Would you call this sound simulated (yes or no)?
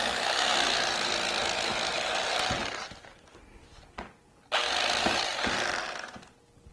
no